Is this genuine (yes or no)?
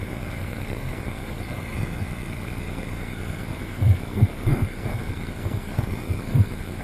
no